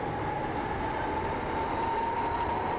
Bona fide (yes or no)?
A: yes